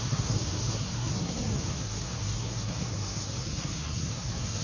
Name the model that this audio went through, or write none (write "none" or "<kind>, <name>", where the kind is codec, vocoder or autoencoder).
codec, SNAC